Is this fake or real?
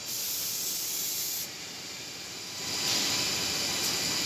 real